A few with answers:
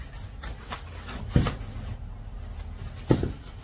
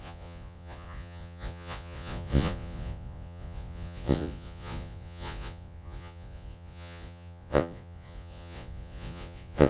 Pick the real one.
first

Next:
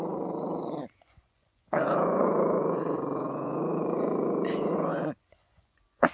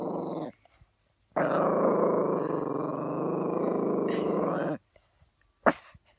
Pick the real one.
second